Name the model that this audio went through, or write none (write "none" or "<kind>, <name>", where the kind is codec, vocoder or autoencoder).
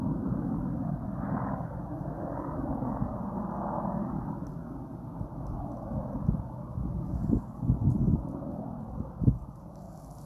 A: none